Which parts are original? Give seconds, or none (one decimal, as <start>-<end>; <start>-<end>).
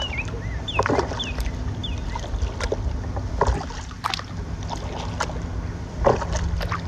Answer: 0.0-6.9